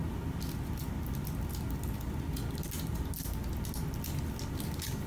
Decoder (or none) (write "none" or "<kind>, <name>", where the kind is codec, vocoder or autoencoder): none